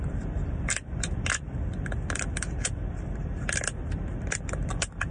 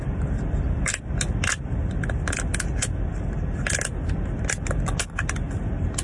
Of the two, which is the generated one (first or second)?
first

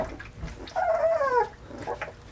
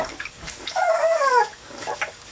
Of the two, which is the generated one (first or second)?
second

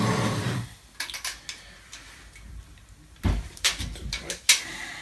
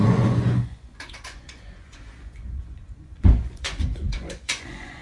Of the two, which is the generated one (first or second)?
second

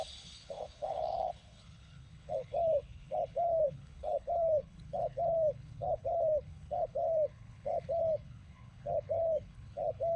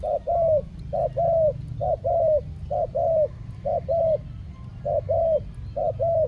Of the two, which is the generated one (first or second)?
first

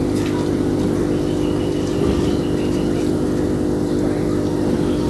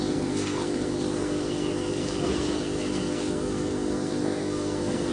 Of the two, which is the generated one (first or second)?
second